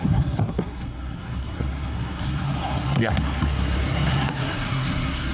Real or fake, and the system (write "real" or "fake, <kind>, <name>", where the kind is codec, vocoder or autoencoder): fake, codec, SNAC